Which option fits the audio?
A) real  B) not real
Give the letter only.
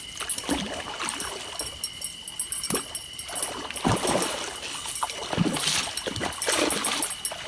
A